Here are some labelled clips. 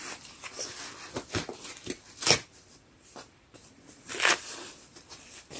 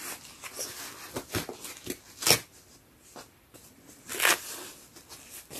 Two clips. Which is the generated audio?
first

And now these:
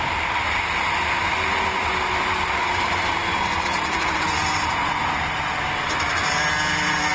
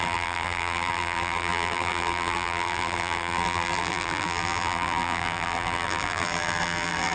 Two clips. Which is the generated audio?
second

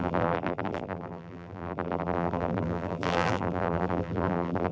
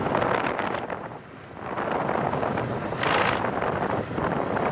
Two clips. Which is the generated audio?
first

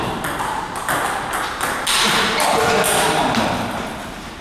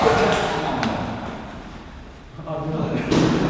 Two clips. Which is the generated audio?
second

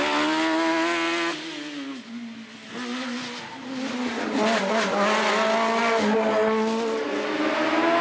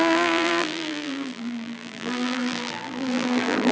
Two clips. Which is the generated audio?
second